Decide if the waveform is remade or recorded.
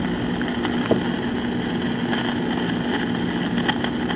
recorded